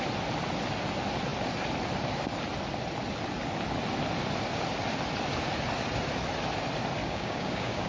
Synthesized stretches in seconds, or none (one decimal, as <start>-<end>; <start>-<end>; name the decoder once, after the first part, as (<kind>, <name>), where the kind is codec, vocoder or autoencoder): 7.0-7.9 (codec, DAC)